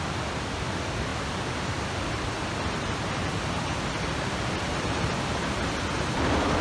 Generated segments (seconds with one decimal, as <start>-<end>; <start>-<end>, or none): none